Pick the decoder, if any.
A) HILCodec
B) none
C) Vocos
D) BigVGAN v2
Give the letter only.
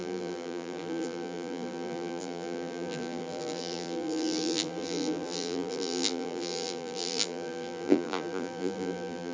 D